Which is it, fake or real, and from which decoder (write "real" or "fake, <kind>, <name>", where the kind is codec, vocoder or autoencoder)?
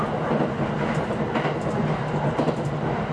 real